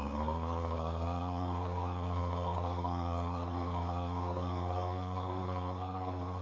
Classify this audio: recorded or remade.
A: remade